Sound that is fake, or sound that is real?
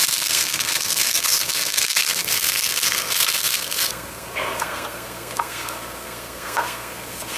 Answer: fake